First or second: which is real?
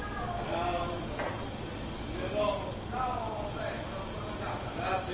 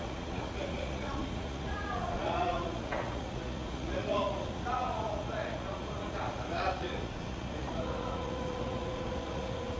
first